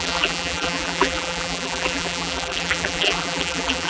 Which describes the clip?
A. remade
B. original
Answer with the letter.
A